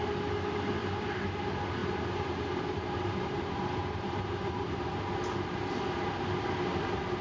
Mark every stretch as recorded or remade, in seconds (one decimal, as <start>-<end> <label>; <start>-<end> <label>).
0.0-0.8 recorded; 0.8-1.4 remade; 1.4-1.8 recorded; 1.8-5.0 remade; 5.0-7.2 recorded